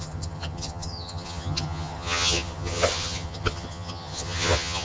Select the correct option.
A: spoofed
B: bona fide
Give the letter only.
A